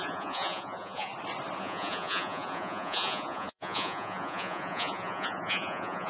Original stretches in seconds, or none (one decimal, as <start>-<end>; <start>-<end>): 1.1-1.6